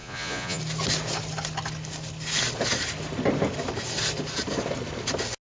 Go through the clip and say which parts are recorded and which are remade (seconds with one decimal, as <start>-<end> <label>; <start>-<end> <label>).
0.0-0.6 remade; 0.6-5.6 recorded